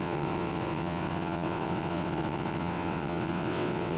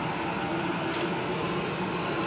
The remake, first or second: first